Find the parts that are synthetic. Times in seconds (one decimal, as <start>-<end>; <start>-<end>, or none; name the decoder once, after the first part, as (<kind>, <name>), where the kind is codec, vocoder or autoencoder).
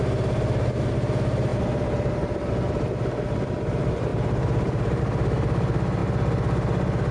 0.0-7.1 (vocoder, BigVGAN v2)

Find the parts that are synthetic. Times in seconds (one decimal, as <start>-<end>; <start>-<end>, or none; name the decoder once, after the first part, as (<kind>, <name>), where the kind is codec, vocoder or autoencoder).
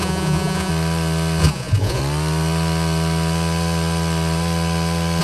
0.0-0.7 (vocoder, Vocos); 1.4-2.0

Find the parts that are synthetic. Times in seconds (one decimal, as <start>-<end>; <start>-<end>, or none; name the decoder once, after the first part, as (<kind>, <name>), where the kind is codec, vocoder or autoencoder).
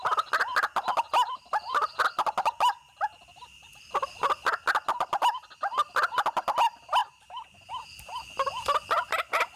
none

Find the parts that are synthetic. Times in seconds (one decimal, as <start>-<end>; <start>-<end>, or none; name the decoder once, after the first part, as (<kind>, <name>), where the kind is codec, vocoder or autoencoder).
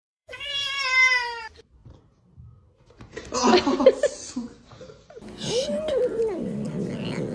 0.0-0.7 (vocoder, Vocos)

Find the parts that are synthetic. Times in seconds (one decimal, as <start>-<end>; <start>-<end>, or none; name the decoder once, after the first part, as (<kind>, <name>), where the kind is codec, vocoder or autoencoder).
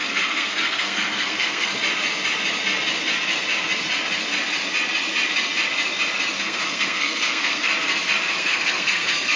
0.0-1.7 (codec, SNAC); 6.4-7.7; 8.3-9.4